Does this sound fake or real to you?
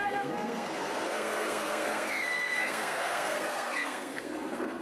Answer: fake